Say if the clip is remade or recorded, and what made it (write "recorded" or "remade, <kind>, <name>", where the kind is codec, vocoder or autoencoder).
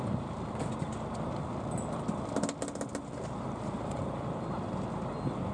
recorded